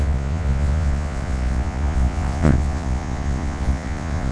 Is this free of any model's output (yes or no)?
no